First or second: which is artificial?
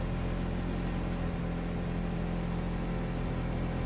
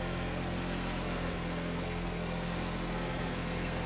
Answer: second